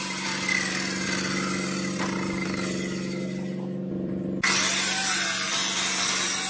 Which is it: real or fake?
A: real